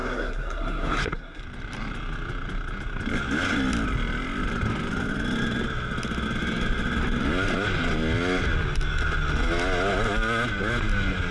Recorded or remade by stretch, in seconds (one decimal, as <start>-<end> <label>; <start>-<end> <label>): 0.0-1.4 remade; 1.4-11.3 recorded